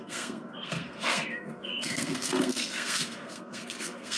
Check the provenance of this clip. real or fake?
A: fake